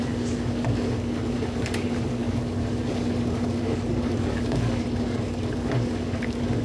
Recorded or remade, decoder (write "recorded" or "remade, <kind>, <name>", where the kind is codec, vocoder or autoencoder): remade, codec, DAC